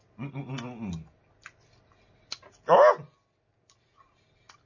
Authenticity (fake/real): real